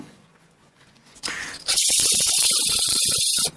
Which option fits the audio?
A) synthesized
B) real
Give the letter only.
A